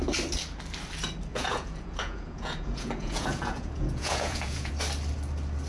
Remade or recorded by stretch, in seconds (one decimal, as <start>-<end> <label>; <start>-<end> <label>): 0.0-1.3 recorded; 1.3-4.7 remade; 4.7-5.7 recorded